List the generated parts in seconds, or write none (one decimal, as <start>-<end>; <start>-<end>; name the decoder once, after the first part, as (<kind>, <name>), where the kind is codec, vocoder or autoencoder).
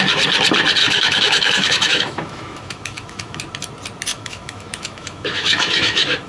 0.8-3.4 (autoencoder, DAC-VAE); 4.1-6.3